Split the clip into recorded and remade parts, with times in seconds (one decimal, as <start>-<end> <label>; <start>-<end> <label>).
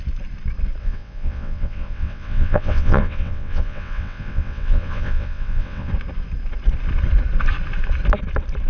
0.0-0.8 recorded; 0.8-5.9 remade; 5.9-8.7 recorded